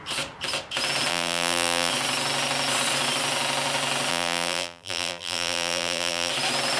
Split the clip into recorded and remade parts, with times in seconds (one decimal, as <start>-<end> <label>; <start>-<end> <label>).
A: 0.0-1.1 recorded; 1.1-1.9 remade; 1.9-4.1 recorded; 4.1-6.3 remade; 6.3-6.8 recorded

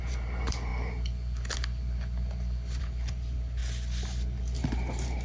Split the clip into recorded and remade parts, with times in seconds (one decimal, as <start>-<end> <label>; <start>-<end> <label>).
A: 0.0-0.7 remade; 0.7-2.8 recorded; 2.8-3.6 remade; 3.6-4.4 recorded; 4.4-5.2 remade

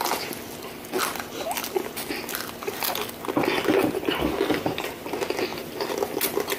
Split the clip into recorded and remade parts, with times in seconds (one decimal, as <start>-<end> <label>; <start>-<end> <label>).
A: 0.0-1.6 recorded; 1.6-2.3 remade; 2.3-5.5 recorded; 5.5-6.6 remade

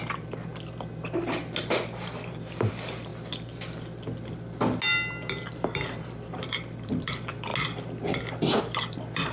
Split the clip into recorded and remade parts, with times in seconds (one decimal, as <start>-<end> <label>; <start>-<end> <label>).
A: 0.0-0.5 remade; 0.5-1.6 recorded; 1.6-3.1 remade; 3.1-5.5 recorded; 5.5-7.5 remade; 7.5-8.6 recorded; 8.6-9.3 remade

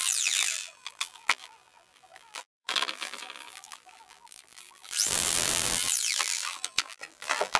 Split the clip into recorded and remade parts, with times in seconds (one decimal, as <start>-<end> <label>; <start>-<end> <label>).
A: 0.0-7.6 remade